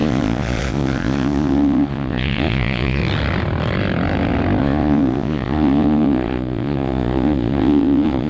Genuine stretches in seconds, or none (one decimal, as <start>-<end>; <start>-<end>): 3.0-4.6